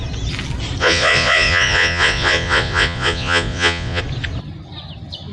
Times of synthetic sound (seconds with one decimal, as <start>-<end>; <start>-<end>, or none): 0.8-4.0